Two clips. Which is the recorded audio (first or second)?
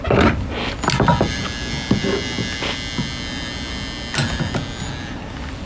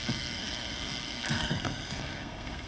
first